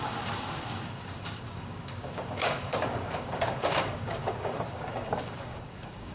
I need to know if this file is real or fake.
fake